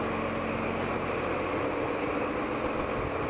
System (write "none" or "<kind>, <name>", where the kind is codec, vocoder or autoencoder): none